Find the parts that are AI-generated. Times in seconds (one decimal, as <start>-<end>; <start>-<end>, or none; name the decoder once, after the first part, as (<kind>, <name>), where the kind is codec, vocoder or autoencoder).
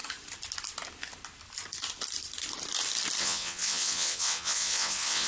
3.2-5.3 (vocoder, WaveNeXt)